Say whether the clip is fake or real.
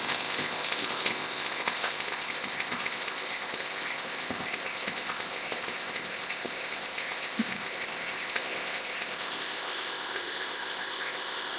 fake